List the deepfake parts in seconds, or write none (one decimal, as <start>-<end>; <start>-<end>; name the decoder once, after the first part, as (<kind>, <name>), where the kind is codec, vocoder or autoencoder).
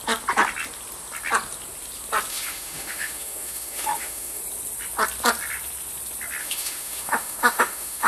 2.3-4.4 (autoencoder, DAC-VAE); 6.4-8.1